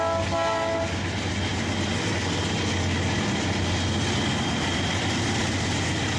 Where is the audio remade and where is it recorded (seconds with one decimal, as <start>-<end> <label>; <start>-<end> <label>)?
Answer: 0.0-6.2 recorded